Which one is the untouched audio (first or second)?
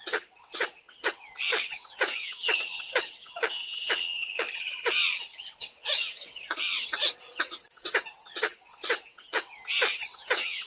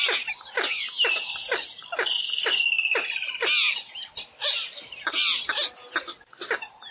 second